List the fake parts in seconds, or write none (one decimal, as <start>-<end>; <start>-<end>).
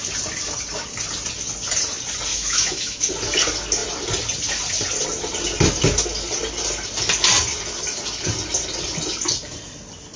2.3-3.1